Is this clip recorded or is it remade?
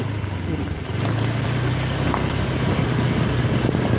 recorded